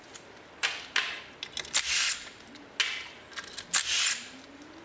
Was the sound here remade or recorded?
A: recorded